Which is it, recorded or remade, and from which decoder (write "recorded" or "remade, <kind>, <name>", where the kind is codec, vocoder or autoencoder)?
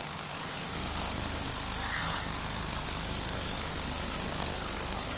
remade, codec, SNAC